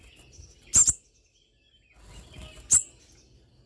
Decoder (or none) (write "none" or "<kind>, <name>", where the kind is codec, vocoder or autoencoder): none